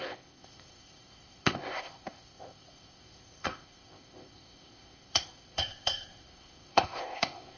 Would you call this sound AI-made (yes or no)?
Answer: yes